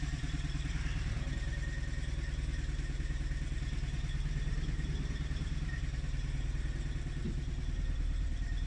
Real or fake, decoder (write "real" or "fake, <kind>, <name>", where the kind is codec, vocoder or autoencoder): fake, vocoder, BigVGAN v2